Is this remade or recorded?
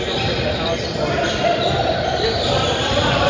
recorded